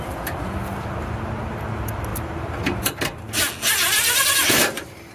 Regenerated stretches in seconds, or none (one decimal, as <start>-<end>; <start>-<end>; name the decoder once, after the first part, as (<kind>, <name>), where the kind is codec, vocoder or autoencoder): 4.4-5.1 (vocoder, BigVGAN v2)